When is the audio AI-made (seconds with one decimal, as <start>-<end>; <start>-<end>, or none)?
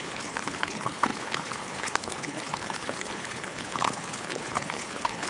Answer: 0.0-5.3